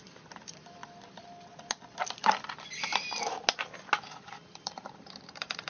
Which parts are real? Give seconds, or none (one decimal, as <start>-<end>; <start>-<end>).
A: 0.8-4.2

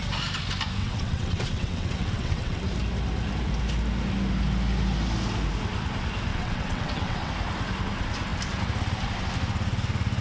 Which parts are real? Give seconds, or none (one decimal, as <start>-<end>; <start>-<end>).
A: 0.0-0.8; 2.6-6.3; 7.3-10.2

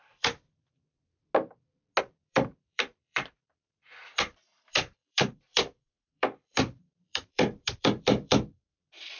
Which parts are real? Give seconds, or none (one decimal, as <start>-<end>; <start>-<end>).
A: 1.1-2.0

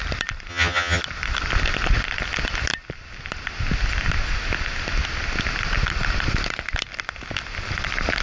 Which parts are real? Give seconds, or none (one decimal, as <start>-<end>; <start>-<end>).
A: 0.0-0.5; 1.0-8.2

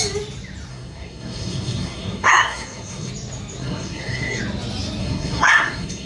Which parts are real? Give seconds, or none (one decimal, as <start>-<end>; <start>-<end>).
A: 0.0-0.7; 3.1-3.6; 4.4-5.0

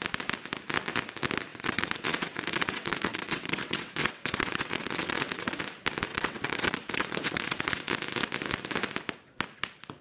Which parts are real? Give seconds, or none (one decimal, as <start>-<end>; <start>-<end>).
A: 0.0-1.5; 5.6-6.1; 7.9-10.0

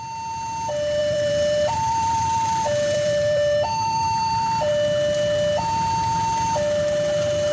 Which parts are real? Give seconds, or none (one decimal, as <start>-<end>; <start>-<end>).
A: 0.0-1.0; 4.7-7.5

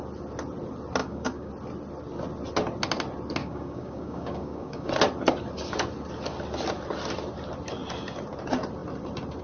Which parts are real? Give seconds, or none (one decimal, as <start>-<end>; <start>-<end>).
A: 0.0-1.0; 1.5-3.4; 4.9-9.4